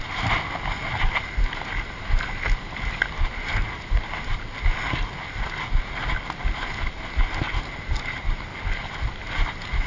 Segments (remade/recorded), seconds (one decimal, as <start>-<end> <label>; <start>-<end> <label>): 0.0-9.9 recorded